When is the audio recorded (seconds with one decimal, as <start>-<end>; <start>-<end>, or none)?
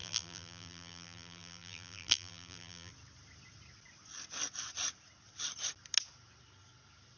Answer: 2.9-7.2